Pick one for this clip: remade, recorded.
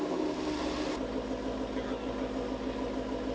recorded